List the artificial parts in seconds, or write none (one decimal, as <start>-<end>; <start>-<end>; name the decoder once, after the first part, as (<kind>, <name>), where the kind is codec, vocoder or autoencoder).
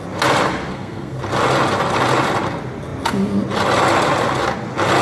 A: 0.7-1.2 (codec, SNAC)